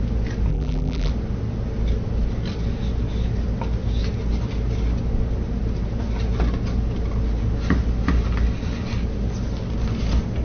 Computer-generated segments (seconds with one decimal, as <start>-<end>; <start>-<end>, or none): 0.5-1.1